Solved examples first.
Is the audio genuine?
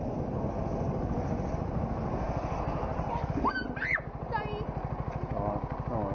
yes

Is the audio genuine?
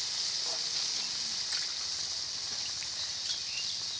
yes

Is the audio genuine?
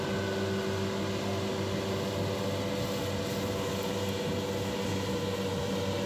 yes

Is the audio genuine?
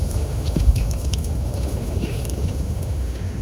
no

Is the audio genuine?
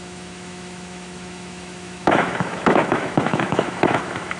no